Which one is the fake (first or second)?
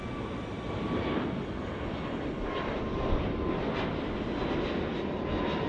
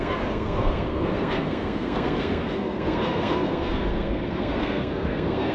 second